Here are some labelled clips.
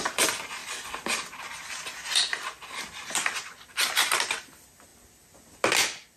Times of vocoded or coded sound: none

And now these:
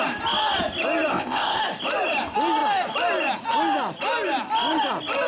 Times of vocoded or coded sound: 1.1-1.6 (codec, ZipCodec)

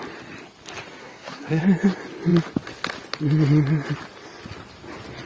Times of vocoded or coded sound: 1.0-1.6 (codec, SNAC)

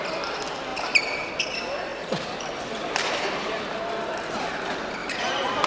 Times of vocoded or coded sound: 0.7-1.3 (vocoder, BigVGAN v2); 1.9-4.6; 5.0-5.7

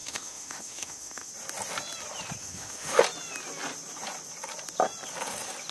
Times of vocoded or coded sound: 0.0-1.3 (autoencoder, DAC-VAE); 2.4-3.0

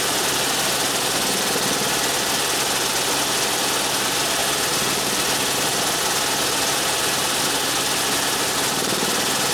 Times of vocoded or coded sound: none

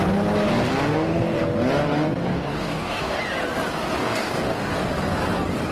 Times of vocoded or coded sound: 0.9-1.4 (codec, DAC); 2.3-3.2; 4.0-4.7

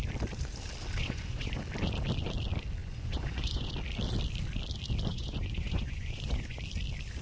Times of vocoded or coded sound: 1.0-1.6 (vocoder, Vocos); 2.8-3.7; 5.1-6.6